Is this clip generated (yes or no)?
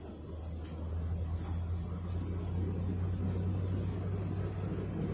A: no